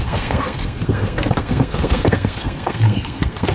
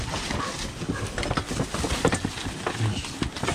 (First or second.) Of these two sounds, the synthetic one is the first